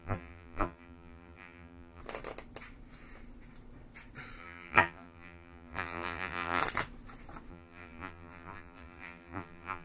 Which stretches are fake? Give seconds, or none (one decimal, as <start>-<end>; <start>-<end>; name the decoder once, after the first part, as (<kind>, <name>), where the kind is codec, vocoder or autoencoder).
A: 0.0-2.0 (vocoder, BigVGAN v2); 4.4-6.6; 7.5-9.8